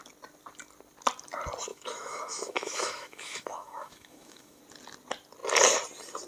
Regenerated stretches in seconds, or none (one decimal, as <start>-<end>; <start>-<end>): 1.7-4.6

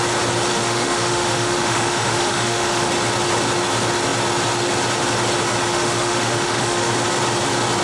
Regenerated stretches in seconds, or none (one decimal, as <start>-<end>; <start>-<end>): 0.5-2.9; 5.7-6.9

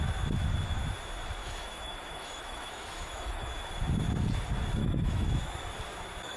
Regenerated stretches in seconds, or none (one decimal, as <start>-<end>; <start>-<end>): 1.4-3.7; 4.8-5.4

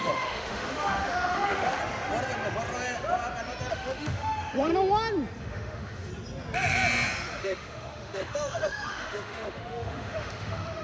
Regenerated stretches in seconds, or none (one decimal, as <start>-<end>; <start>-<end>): 0.0-1.8; 3.7-4.7; 5.4-6.1; 7.4-10.8

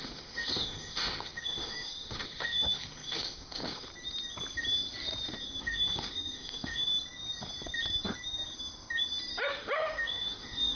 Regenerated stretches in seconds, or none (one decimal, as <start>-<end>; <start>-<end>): 0.0-3.9; 5.6-6.9; 9.5-10.8

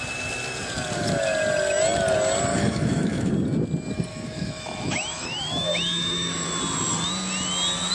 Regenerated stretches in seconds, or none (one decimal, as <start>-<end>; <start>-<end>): 2.5-3.3; 4.1-6.6

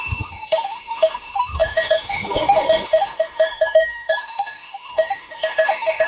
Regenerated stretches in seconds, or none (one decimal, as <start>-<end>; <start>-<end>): 0.0-6.1